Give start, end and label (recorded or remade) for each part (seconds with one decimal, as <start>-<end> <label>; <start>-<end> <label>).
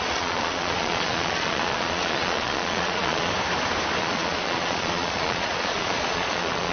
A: 0.0-3.3 remade; 3.3-4.0 recorded; 4.0-6.7 remade